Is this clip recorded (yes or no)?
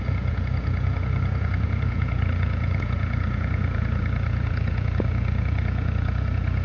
no